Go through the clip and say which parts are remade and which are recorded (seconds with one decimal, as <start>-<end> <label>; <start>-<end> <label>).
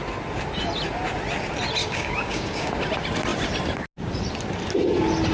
0.0-1.8 recorded; 1.8-2.7 remade; 2.7-5.3 recorded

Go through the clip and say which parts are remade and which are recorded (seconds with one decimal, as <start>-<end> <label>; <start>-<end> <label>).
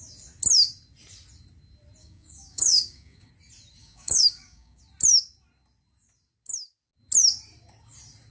0.0-2.0 recorded; 2.0-3.3 remade; 3.3-3.8 recorded; 3.8-4.8 remade; 4.8-8.3 recorded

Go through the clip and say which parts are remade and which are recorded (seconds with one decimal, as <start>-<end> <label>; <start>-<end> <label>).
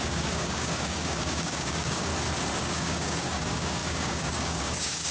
0.0-2.1 remade; 2.1-2.6 recorded; 2.6-5.1 remade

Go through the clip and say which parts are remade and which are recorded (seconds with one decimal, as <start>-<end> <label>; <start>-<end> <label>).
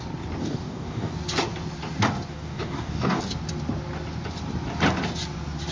0.0-0.4 recorded; 0.4-1.1 remade; 1.1-2.3 recorded; 2.3-3.2 remade; 3.2-5.7 recorded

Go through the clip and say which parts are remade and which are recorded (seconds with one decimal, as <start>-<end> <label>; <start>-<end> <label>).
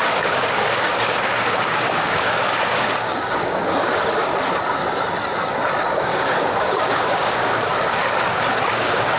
0.0-4.3 remade; 4.3-5.8 recorded; 5.8-7.7 remade; 7.7-8.7 recorded; 8.7-9.2 remade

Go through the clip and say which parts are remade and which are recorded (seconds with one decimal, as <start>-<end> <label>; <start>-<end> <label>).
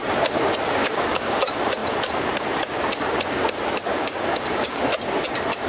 0.0-0.8 recorded; 0.8-1.4 remade; 1.4-3.9 recorded; 3.9-4.8 remade; 4.8-5.7 recorded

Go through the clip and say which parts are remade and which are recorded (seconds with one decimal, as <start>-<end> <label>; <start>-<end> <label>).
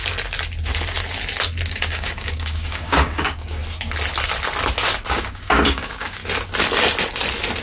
0.0-1.7 recorded; 1.7-3.6 remade; 3.6-5.1 recorded; 5.1-6.2 remade; 6.2-7.6 recorded